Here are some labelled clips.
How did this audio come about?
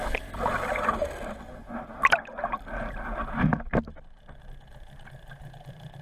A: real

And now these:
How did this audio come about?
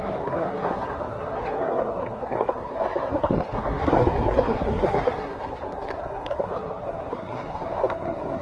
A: fake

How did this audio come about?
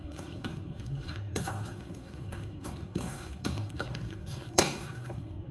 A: fake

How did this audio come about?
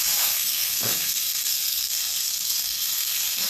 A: fake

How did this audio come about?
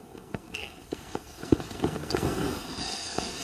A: fake